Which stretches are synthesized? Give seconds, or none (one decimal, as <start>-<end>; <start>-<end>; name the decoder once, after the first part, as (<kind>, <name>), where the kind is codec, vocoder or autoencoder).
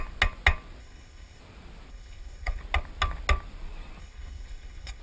0.8-1.4 (codec, HILCodec); 1.9-2.6; 4.0-5.0